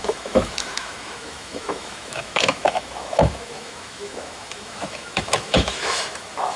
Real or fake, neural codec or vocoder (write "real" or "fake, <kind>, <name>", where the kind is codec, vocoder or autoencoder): fake, autoencoder, DAC-VAE